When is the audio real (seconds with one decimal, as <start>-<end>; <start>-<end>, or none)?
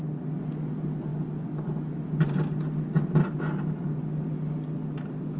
0.0-5.4